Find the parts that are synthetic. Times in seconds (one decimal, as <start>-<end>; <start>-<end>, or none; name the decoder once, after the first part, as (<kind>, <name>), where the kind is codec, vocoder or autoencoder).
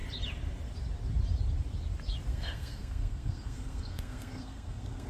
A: 2.3-5.1 (codec, SNAC)